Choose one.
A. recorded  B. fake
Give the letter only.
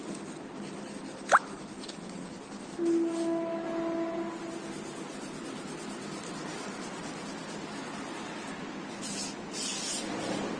A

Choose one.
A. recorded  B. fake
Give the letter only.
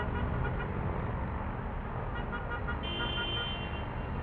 A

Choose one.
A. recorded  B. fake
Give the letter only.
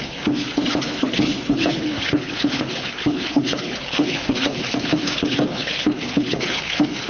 B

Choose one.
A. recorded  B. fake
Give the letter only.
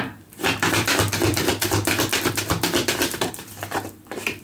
B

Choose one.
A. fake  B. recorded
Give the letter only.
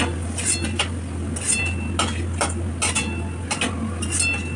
B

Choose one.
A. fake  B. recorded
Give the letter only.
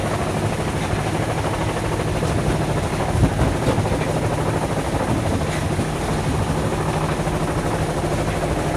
B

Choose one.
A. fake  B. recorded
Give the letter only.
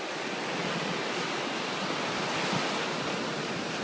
B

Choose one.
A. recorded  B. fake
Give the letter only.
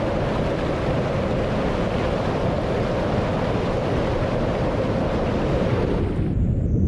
A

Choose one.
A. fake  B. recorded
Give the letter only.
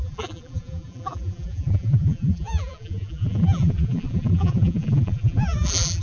A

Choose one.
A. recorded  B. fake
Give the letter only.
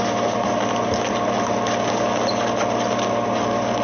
A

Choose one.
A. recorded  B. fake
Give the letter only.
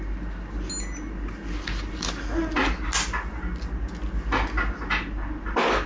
A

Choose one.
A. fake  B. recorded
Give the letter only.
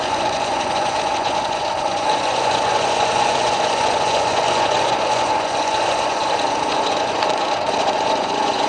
A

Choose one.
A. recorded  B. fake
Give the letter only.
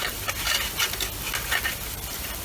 A